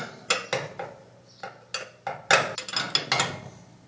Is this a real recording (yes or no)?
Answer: yes